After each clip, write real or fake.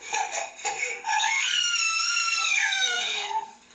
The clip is fake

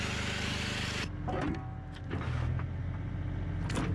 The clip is real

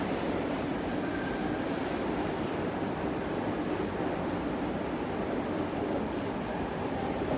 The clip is real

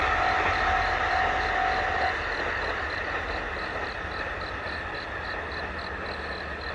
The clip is real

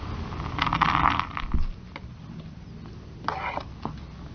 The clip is real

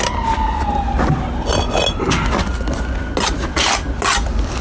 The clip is real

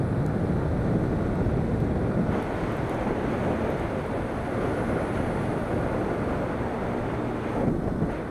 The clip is real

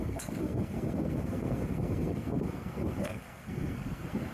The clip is fake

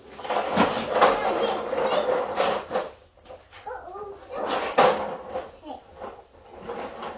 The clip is real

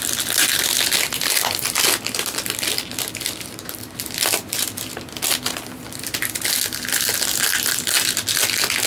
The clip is real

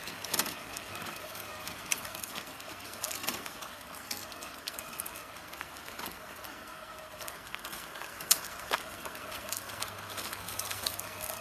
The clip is fake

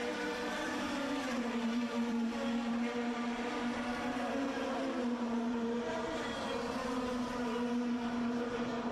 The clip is fake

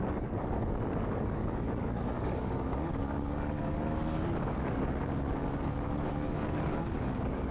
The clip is fake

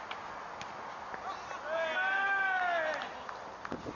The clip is real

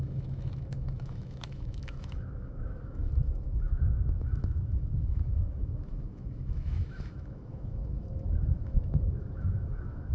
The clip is fake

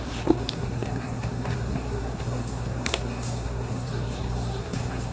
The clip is fake